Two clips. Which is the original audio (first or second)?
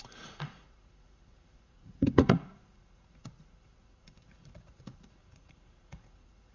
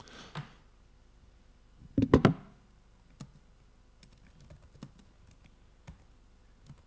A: second